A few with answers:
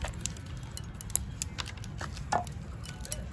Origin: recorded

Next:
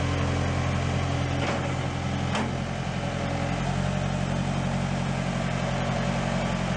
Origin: recorded